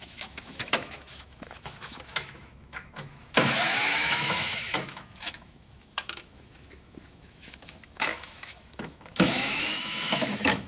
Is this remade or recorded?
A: remade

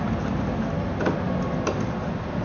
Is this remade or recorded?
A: recorded